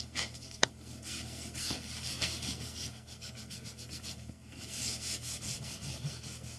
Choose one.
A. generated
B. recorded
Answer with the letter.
A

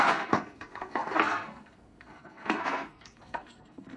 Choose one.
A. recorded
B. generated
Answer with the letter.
B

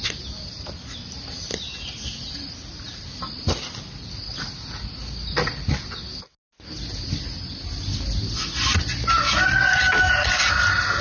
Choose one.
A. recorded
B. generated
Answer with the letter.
A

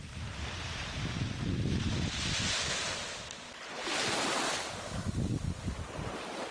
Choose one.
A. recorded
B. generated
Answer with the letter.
A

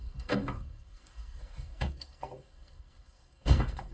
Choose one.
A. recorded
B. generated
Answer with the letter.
B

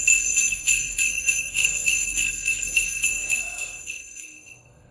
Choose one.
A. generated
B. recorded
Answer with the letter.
A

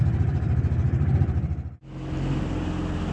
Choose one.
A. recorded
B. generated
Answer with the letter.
A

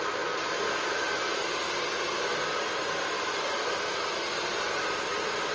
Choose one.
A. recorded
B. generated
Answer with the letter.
A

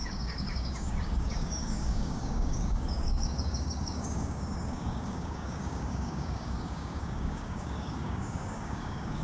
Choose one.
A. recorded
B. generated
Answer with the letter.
B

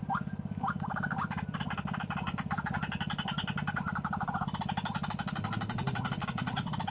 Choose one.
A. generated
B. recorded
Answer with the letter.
B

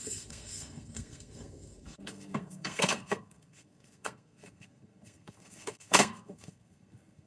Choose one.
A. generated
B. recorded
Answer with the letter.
A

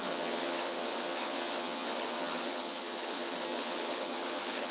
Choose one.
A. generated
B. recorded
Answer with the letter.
A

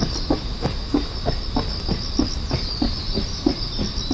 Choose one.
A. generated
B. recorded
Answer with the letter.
B